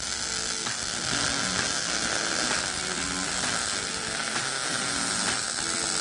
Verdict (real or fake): real